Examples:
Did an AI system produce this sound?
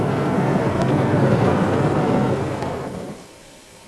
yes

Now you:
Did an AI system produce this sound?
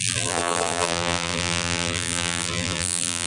yes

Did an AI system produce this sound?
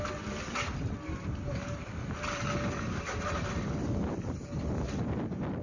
no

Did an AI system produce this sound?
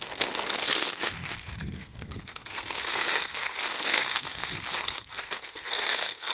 yes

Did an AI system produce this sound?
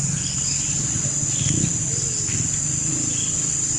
no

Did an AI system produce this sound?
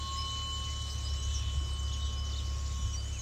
no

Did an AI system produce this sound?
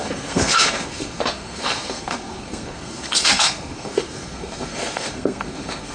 yes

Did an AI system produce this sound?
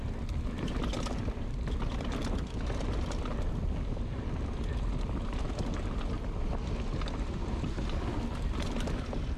no